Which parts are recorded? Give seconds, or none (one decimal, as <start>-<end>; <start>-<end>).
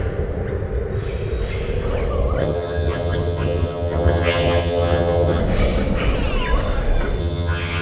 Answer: 0.0-2.4; 5.4-7.2